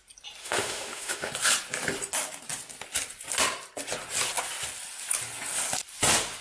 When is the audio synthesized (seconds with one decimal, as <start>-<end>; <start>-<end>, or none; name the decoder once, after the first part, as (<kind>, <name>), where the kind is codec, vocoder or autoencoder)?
0.4-1.3 (autoencoder, DAC-VAE)